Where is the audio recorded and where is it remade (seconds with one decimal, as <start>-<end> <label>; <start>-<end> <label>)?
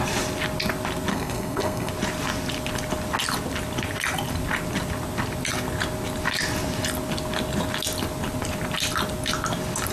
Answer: 0.0-1.1 recorded; 1.1-1.9 remade; 1.9-9.9 recorded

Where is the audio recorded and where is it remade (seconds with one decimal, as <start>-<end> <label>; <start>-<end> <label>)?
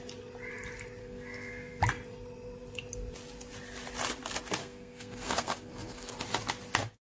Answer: 0.0-1.0 recorded; 1.0-1.8 remade; 1.8-4.6 recorded; 4.6-6.1 remade; 6.1-7.0 recorded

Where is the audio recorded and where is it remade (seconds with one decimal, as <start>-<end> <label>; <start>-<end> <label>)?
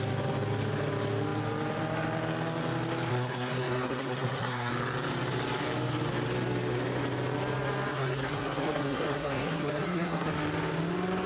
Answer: 0.0-3.1 recorded; 3.1-4.7 remade; 4.7-7.9 recorded; 7.9-10.3 remade; 10.3-11.3 recorded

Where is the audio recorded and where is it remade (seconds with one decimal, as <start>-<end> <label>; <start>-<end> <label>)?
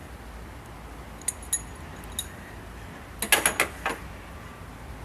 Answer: 0.0-5.0 recorded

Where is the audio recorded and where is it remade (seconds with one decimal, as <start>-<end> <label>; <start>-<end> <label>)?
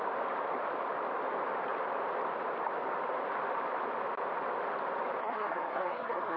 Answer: 0.0-5.2 recorded; 5.2-6.4 remade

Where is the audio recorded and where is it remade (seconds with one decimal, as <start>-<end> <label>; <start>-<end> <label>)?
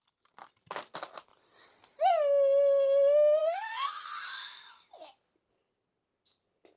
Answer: 0.0-3.4 recorded; 3.4-4.1 remade; 4.1-6.8 recorded